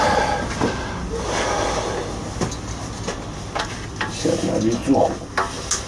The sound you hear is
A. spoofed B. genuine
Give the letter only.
B